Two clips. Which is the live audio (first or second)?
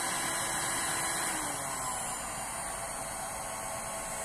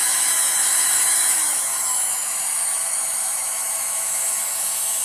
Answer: first